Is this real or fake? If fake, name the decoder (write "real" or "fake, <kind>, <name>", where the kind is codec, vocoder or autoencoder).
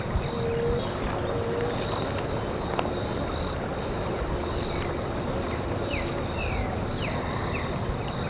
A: real